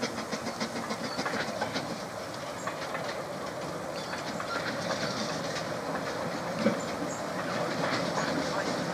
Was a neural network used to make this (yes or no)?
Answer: no